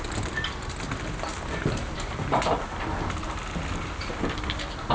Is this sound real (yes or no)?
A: yes